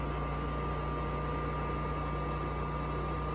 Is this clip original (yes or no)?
yes